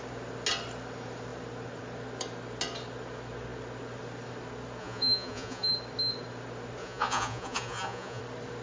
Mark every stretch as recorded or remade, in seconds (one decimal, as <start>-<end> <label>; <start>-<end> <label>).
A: 0.0-4.8 recorded; 4.8-5.7 remade; 5.7-6.8 recorded; 6.8-8.2 remade; 8.2-8.6 recorded